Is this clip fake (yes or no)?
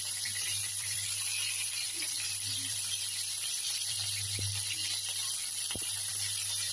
yes